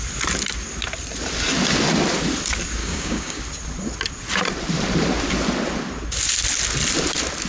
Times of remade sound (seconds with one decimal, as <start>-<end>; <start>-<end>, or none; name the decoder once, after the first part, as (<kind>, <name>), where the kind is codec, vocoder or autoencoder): 2.8-3.4 (codec, DAC)